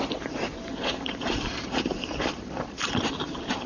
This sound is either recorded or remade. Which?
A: remade